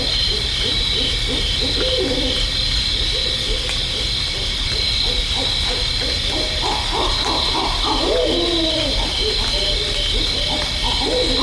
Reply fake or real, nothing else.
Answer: real